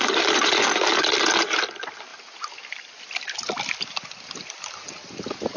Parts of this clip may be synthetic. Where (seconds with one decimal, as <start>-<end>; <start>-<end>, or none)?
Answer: none